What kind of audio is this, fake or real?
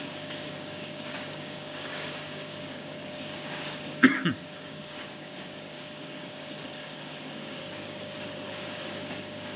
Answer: fake